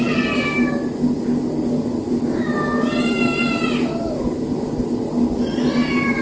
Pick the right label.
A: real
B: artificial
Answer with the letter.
A